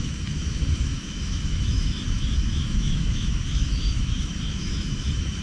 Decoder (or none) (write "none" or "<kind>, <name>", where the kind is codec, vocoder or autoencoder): autoencoder, DAC-VAE